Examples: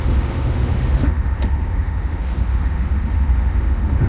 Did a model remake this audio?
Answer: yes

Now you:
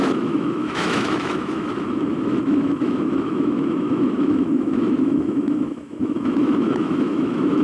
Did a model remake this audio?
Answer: yes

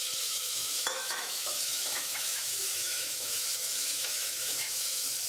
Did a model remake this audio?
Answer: yes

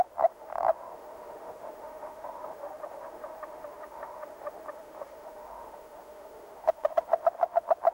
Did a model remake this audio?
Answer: yes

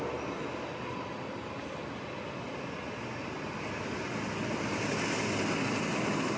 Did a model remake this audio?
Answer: no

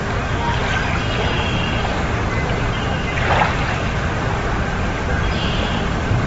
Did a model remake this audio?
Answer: no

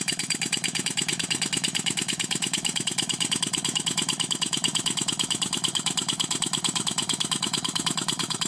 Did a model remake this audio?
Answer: yes